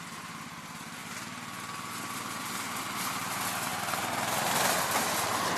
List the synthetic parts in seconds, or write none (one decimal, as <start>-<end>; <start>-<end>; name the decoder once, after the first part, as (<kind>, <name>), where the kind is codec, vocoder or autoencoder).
none